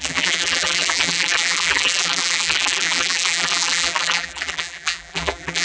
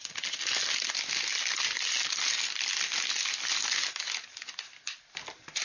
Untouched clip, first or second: second